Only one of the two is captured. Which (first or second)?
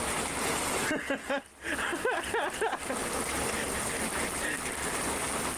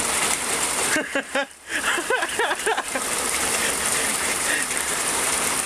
first